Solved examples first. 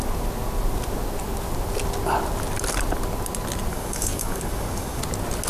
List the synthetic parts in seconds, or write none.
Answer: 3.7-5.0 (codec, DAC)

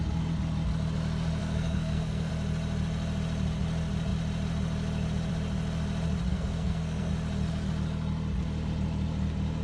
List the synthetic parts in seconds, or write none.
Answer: 1.4-2.3 (codec, SNAC); 6.3-7.1